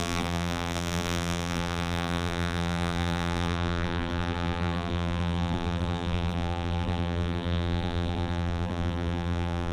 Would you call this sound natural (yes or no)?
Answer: no